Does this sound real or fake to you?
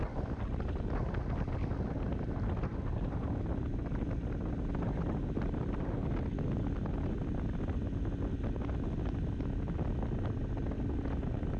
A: real